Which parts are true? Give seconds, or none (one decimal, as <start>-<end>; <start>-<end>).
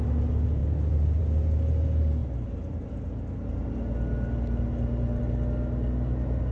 0.0-6.5